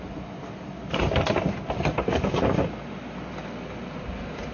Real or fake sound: real